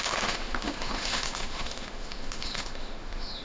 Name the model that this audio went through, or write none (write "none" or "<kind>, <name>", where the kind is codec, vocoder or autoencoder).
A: autoencoder, DAC-VAE